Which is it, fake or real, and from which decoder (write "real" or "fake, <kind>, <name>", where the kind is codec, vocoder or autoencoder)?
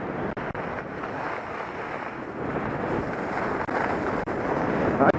real